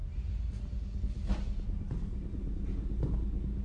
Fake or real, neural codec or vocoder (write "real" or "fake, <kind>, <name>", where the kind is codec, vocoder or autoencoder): real